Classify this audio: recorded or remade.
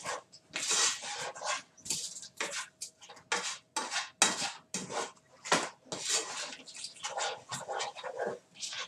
recorded